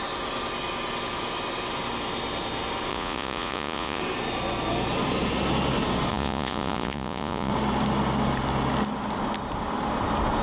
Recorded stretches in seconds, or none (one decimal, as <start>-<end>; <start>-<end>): 0.0-2.9; 4.0-6.1; 7.5-10.4